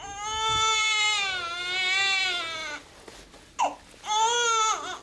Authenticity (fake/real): real